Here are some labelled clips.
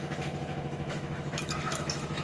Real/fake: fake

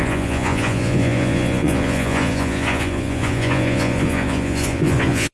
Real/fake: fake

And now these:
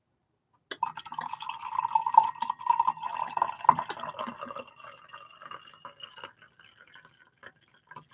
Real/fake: real